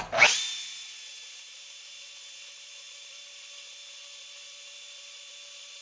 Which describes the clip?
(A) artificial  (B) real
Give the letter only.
B